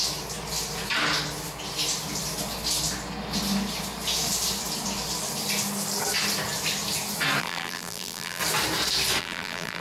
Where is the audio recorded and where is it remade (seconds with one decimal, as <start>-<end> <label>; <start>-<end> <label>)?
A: 0.0-7.4 recorded; 7.4-8.4 remade; 8.4-9.2 recorded; 9.2-9.8 remade